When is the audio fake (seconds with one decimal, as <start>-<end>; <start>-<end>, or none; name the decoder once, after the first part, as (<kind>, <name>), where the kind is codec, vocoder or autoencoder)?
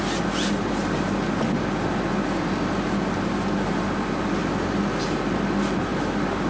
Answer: none